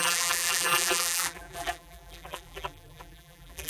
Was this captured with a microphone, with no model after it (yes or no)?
no